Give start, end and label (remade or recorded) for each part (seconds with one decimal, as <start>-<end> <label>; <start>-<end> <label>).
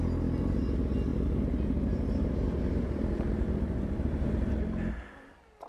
0.0-1.1 recorded; 1.1-4.5 remade; 4.5-5.7 recorded